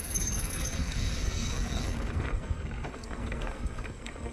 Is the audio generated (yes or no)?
yes